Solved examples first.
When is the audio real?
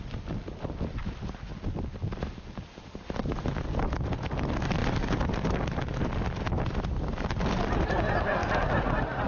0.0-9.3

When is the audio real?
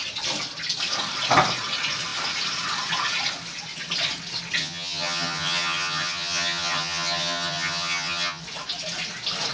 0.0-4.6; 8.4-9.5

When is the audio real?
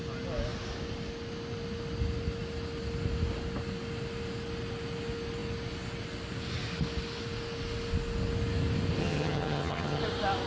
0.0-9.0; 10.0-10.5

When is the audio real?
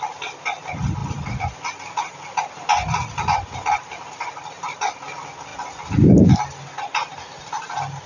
0.0-8.1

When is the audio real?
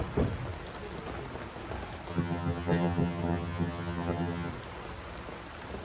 0.0-2.1; 4.5-5.8